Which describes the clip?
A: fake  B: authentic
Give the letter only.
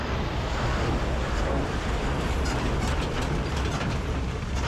A